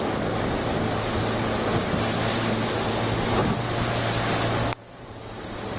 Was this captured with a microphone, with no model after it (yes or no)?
yes